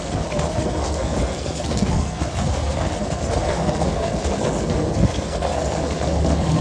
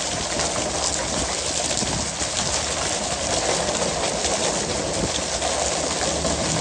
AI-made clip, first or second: first